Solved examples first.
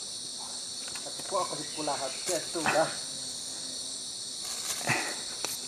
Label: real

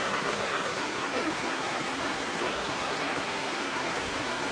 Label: fake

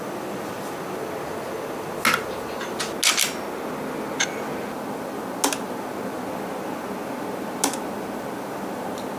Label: real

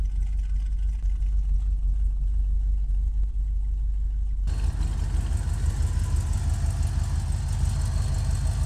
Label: real